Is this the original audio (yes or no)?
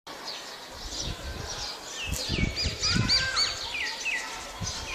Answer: yes